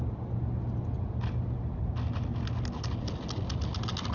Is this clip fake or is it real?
real